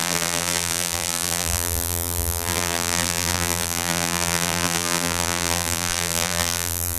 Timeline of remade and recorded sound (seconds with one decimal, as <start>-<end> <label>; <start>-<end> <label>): 0.0-7.0 remade